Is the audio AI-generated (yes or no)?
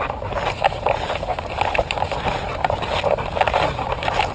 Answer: no